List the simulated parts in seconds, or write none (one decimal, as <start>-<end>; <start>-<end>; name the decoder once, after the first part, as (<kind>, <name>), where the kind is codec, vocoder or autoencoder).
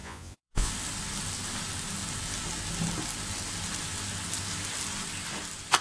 0.0-0.7 (vocoder, Vocos)